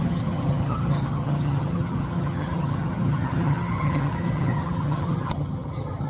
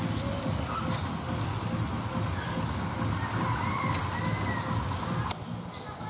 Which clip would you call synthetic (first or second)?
first